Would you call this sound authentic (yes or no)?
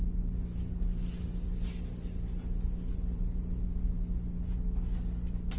yes